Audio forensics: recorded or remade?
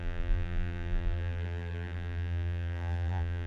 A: remade